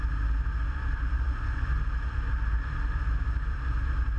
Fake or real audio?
real